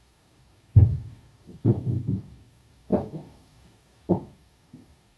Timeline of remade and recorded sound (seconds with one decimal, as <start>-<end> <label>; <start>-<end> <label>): 0.0-5.2 remade